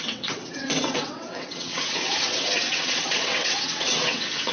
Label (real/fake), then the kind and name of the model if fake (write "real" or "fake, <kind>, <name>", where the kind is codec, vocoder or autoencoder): fake, vocoder, WaveNeXt